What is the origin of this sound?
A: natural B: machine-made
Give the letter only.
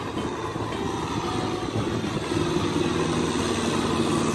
A